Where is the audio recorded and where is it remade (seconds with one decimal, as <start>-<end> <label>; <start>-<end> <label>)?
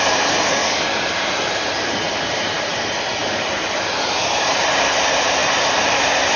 0.0-0.6 remade; 0.6-2.3 recorded; 2.3-6.4 remade